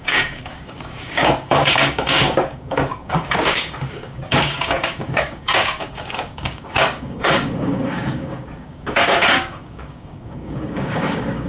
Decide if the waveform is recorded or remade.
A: remade